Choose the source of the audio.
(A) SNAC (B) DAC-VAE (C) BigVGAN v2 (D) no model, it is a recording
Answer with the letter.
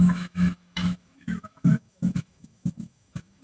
B